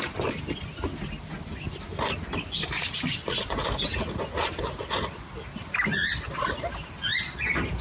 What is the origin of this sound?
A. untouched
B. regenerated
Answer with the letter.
A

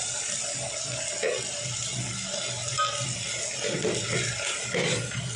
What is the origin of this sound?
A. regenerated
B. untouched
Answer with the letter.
B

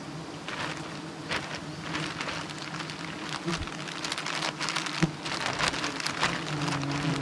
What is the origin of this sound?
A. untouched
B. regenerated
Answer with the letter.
A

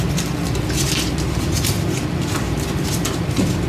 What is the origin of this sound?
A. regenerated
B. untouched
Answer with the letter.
A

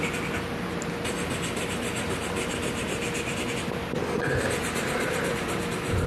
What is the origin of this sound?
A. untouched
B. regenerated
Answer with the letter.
A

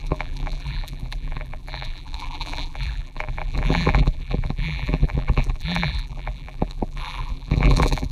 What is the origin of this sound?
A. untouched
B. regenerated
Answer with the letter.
B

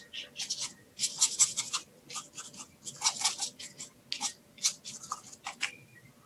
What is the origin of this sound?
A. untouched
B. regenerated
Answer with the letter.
A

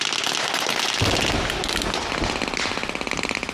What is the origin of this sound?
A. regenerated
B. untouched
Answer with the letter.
B